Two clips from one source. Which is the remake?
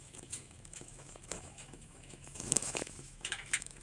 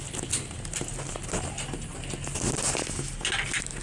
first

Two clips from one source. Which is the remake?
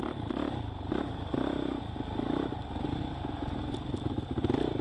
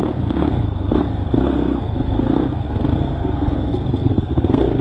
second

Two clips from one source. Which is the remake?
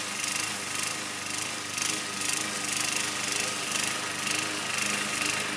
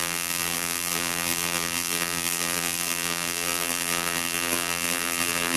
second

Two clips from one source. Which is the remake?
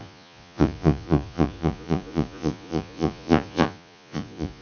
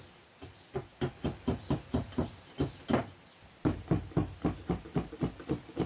first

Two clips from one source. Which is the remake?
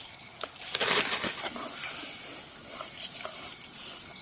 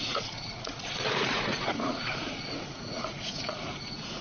second